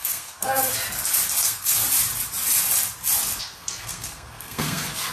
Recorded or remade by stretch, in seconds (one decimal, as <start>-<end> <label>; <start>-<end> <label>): 0.0-0.7 remade; 0.7-1.4 recorded; 1.4-1.8 remade; 1.8-3.4 recorded; 3.4-5.1 remade